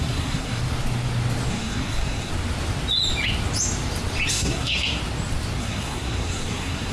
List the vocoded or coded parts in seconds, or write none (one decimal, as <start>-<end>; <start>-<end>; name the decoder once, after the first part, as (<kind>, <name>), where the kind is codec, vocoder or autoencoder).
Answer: 0.0-0.6 (codec, SNAC); 1.5-2.3; 4.3-5.0; 5.6-6.9